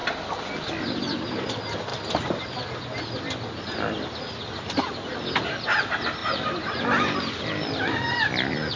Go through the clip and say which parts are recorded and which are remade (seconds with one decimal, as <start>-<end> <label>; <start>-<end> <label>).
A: 0.0-8.8 recorded